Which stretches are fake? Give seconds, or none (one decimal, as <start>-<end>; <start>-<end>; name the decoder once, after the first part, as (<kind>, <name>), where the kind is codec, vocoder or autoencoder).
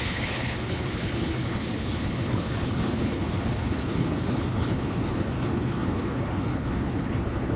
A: 0.0-7.6 (codec, HILCodec)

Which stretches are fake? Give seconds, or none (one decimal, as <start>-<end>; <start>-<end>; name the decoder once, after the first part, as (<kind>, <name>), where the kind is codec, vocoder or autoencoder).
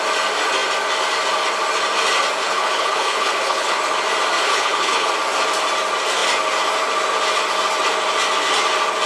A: 2.4-3.8 (codec, HILCodec); 4.5-5.1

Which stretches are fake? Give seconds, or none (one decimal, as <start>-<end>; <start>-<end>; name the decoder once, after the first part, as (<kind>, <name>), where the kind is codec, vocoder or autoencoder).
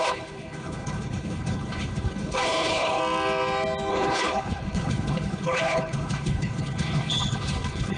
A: 0.0-3.0 (codec, HILCodec); 3.9-8.0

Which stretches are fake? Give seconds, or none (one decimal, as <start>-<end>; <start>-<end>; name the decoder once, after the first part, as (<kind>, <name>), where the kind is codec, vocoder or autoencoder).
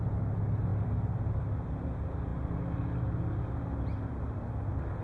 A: none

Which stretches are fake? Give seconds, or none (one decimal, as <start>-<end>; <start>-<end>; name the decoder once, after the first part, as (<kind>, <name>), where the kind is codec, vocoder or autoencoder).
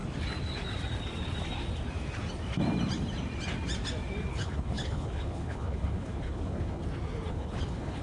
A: 4.3-6.8 (codec, HILCodec); 7.3-8.0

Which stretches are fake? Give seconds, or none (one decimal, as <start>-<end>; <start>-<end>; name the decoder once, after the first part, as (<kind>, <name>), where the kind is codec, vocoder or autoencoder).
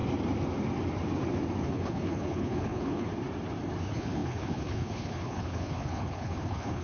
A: 1.6-3.1 (codec, HILCodec); 3.8-6.8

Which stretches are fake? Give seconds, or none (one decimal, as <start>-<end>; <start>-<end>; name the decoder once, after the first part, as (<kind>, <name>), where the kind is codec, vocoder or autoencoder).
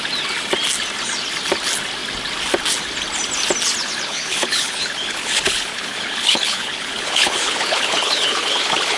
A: 3.8-9.0 (codec, HILCodec)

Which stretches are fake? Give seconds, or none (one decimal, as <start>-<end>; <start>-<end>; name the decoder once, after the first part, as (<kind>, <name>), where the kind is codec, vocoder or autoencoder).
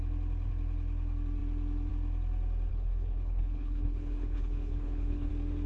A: 2.7-5.3 (codec, HILCodec)